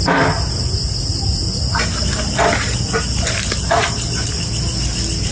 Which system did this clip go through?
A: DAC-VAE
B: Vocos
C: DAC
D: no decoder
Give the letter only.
D